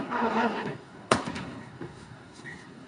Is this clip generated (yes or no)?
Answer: yes